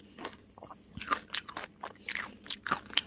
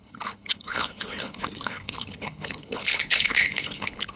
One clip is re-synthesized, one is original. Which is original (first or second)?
first